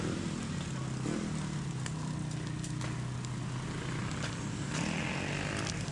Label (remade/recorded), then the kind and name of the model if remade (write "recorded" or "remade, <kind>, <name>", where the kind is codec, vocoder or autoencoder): recorded